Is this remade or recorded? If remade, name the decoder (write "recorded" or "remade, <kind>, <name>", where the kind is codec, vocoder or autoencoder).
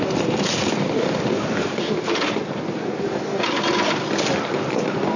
recorded